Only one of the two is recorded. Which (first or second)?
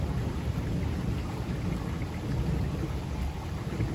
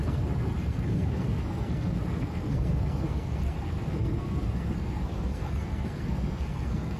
first